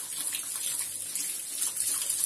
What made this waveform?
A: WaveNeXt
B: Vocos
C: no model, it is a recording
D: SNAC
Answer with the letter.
C